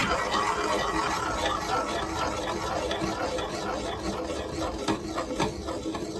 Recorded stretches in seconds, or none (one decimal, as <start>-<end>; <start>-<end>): 0.0-6.2